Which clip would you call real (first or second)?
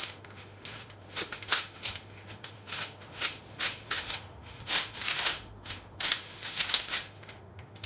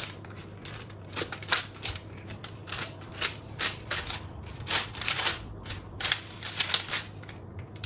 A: second